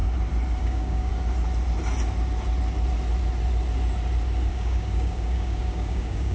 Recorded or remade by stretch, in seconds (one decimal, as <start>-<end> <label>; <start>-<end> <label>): 0.0-0.6 recorded; 0.6-1.1 remade; 1.1-4.5 recorded; 4.5-6.3 remade